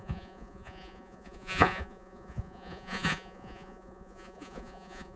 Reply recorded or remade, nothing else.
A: remade